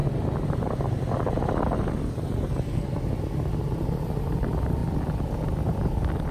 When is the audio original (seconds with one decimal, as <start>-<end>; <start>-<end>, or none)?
0.0-3.8; 4.8-6.3